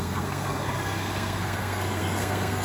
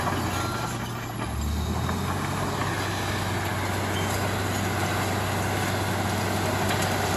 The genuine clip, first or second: second